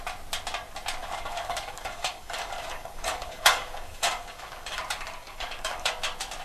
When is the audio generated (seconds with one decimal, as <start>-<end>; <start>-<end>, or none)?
1.0-4.8; 5.2-5.9